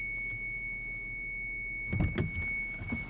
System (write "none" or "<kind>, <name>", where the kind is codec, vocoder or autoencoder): none